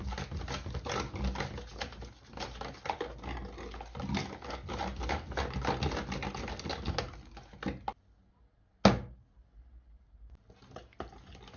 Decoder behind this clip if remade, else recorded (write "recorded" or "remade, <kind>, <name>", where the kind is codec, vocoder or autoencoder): recorded